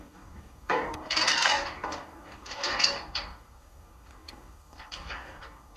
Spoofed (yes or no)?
yes